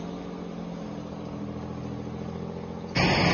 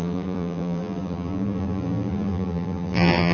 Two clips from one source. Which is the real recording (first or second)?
first